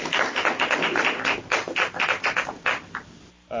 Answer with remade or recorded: recorded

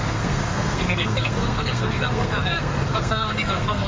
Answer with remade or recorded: remade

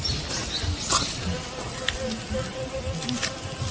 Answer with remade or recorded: recorded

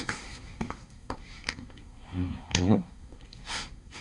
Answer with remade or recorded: remade